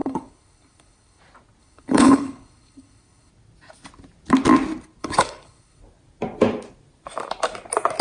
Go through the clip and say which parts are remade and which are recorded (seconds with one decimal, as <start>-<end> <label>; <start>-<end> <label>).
0.0-1.2 remade; 1.2-1.6 recorded; 1.6-3.3 remade; 3.3-5.0 recorded; 5.0-5.8 remade; 5.8-8.0 recorded